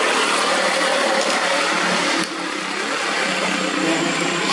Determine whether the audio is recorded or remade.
recorded